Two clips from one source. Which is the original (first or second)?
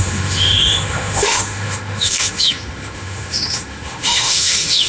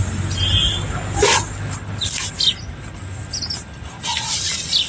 second